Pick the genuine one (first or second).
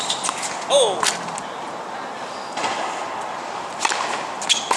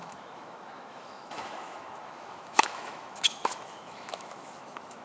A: first